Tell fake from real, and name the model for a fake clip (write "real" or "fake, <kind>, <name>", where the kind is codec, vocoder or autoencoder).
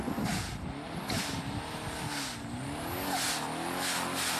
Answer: real